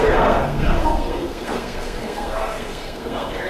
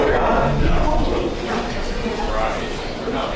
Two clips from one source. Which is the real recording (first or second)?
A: second